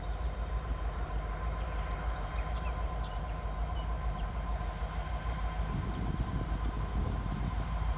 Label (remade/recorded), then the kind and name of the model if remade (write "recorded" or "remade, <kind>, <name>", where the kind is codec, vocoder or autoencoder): remade, vocoder, BigVGAN v2